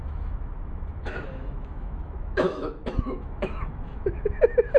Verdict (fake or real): fake